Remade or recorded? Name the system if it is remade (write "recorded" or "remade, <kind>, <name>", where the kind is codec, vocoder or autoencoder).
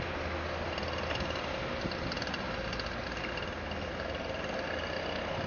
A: recorded